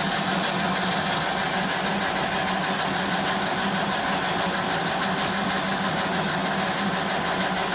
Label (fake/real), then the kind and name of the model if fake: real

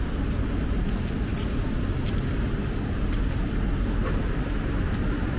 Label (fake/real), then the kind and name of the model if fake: real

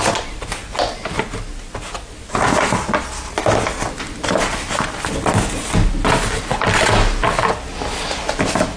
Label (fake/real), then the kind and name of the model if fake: real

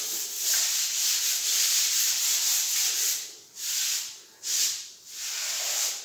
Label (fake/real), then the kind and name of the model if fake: real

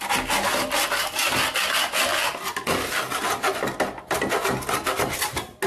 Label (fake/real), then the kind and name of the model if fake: real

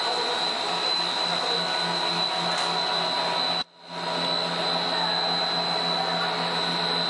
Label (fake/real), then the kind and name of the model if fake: real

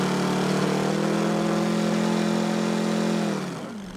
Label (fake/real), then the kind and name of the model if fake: real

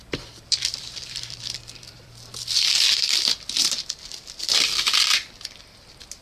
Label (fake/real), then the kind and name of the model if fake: fake, vocoder, BigVGAN v2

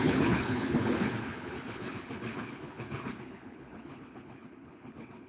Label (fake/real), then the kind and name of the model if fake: fake, codec, HILCodec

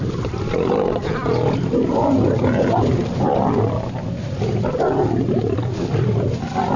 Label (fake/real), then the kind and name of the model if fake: real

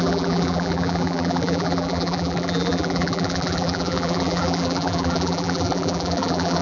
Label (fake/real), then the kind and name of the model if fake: fake, vocoder, BigVGAN v2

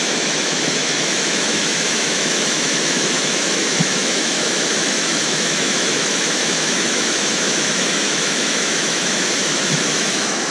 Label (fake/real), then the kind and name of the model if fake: fake, autoencoder, DAC-VAE